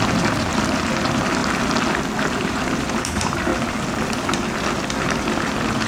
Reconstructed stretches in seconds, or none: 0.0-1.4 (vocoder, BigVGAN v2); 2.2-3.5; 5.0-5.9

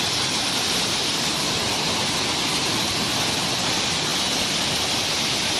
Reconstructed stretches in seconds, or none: 0.4-1.4 (vocoder, BigVGAN v2); 2.7-3.5; 4.1-5.6

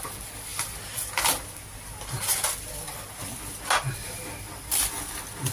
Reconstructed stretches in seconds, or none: none

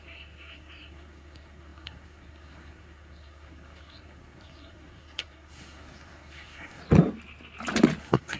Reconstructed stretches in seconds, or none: 0.0-6.8 (codec, SNAC); 8.0-8.4

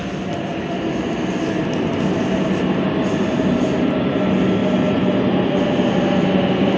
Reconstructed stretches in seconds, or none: none

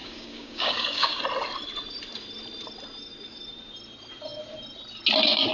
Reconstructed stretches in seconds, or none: 0.0-1.2 (codec, DAC)

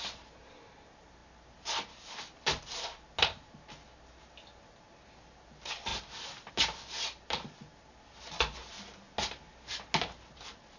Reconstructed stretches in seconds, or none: none